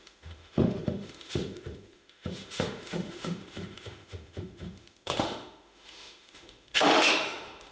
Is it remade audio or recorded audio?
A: remade